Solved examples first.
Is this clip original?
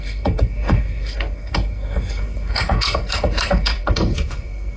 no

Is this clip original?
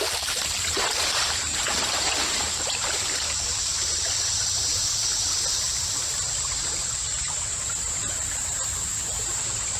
no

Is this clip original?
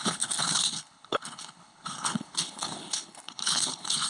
no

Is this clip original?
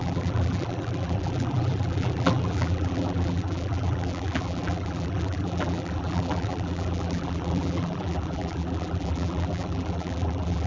no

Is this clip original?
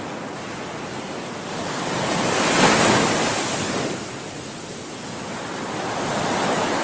yes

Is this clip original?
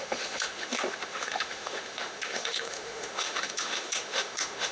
no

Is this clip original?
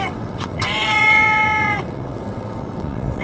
no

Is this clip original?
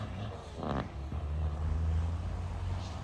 yes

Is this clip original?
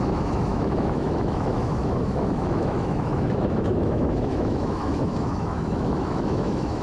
no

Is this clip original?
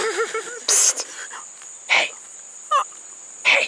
yes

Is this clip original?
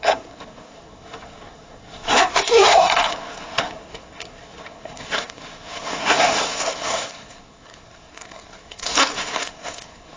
no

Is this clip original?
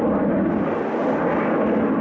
yes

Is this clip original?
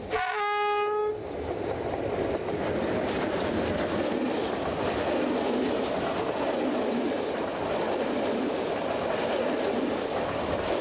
yes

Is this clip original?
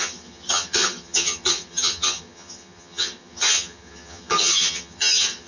no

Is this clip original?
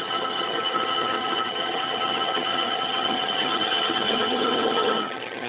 no